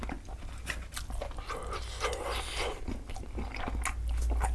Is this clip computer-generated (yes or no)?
no